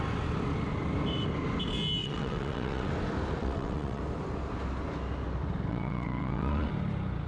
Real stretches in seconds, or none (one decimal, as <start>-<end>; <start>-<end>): 0.0-2.0; 2.9-3.4; 4.0-5.7; 6.7-7.3